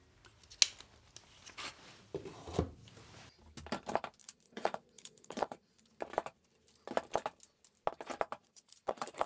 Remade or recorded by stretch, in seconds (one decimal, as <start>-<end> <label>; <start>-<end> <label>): 0.0-4.2 recorded; 4.2-5.8 remade; 5.8-8.4 recorded; 8.4-9.3 remade